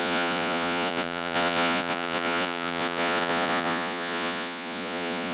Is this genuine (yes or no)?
no